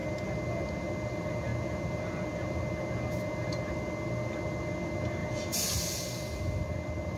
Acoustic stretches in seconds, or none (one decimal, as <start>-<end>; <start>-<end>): 0.0-7.2